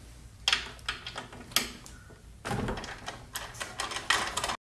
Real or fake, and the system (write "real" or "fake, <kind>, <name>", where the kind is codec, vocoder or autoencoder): real